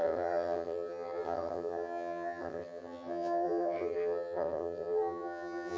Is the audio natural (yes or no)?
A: no